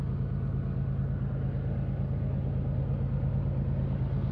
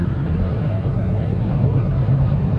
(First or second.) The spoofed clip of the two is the second